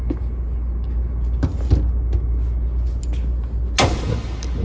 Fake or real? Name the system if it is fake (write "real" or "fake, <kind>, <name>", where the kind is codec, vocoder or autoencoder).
real